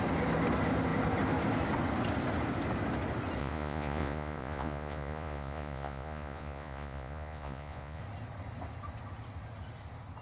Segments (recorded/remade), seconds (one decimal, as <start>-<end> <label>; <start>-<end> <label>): 0.0-3.4 recorded; 3.4-8.0 remade; 8.0-10.2 recorded

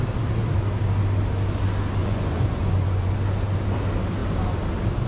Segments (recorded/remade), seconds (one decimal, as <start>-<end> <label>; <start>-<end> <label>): 0.0-2.0 recorded; 2.0-3.1 remade; 3.1-5.1 recorded

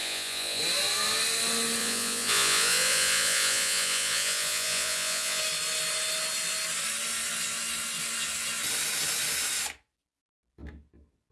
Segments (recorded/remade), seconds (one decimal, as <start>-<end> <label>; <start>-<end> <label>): 0.0-0.6 remade; 0.6-1.8 recorded; 1.8-5.4 remade; 5.4-11.3 recorded

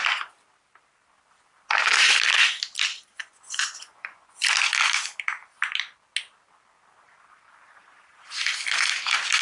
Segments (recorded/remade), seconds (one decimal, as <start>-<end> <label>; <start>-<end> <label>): 0.0-3.1 recorded; 3.1-4.4 remade; 4.4-9.4 recorded

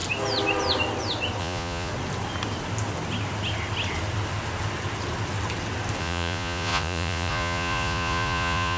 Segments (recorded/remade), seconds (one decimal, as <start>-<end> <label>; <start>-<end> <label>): 0.0-1.4 recorded; 1.4-1.9 remade; 1.9-6.0 recorded; 6.0-8.8 remade